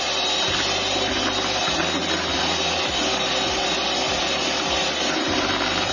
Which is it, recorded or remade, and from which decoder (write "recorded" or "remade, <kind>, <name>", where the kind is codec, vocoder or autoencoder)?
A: recorded